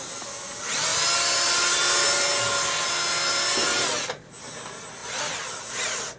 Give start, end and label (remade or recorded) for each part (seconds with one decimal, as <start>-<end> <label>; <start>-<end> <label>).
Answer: 0.0-6.2 recorded